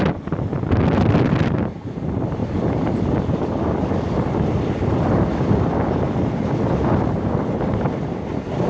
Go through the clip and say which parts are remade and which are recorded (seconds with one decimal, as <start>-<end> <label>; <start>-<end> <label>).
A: 0.0-8.7 recorded